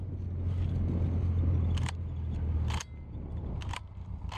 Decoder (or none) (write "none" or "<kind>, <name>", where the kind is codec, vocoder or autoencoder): none